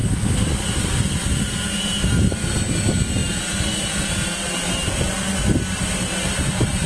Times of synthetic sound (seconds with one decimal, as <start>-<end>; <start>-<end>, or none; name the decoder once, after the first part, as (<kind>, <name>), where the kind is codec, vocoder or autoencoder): none

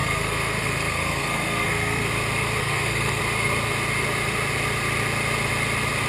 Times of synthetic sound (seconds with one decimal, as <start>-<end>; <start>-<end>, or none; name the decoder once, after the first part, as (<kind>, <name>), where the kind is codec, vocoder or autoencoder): 0.0-2.1 (codec, SNAC); 2.6-3.2

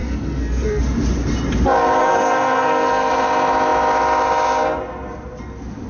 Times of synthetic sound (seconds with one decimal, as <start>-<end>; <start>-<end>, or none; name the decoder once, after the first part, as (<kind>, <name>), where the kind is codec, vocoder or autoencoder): 0.0-0.8 (codec, SNAC); 2.0-3.1

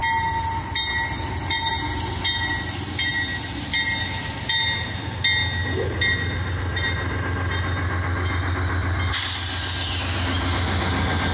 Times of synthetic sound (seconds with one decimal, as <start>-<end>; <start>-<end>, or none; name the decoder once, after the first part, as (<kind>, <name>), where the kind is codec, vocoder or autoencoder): none

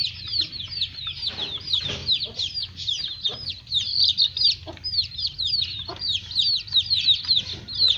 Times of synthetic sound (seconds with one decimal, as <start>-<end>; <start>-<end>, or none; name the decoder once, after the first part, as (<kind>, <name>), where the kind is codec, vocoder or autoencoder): none